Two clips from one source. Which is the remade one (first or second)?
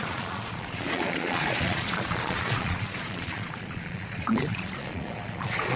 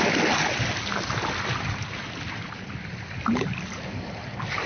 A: first